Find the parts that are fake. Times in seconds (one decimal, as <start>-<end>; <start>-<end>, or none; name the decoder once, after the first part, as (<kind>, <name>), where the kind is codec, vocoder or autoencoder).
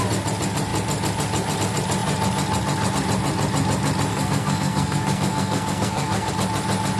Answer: 4.1-6.3 (codec, SNAC)